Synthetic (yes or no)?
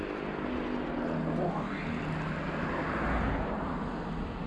no